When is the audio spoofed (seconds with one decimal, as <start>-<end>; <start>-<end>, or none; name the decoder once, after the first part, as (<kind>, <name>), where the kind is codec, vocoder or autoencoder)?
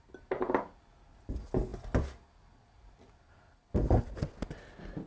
none